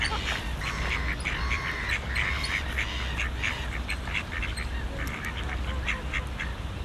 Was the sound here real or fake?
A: real